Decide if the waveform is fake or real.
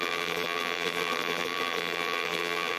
fake